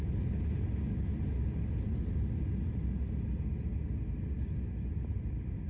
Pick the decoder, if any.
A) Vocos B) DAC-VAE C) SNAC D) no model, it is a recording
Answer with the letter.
D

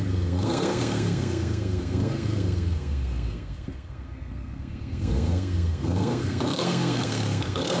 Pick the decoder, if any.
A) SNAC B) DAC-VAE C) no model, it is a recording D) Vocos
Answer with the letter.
A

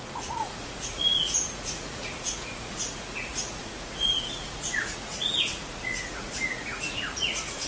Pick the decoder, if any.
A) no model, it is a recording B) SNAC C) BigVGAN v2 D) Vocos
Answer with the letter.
D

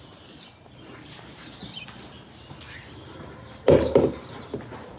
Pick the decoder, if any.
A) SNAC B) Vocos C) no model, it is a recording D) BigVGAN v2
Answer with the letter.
D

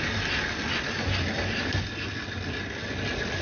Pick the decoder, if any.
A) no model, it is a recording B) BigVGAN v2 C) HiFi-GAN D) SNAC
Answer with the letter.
A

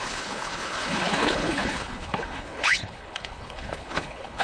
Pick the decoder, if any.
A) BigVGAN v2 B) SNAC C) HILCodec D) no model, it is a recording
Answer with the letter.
C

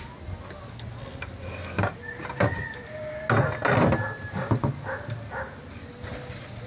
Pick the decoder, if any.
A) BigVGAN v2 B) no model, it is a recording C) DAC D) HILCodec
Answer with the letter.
B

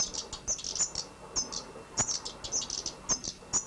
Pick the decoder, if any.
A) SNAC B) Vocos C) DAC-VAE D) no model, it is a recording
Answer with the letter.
D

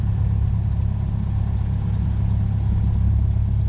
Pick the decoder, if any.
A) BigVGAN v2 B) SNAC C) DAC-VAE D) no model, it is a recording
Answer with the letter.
D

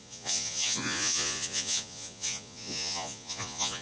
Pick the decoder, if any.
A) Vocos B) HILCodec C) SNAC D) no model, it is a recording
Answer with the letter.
A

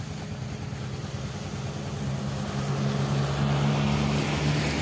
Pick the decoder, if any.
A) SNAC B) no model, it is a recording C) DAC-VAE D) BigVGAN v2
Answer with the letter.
B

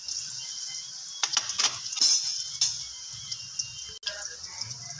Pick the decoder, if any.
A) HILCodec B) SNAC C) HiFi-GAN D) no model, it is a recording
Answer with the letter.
D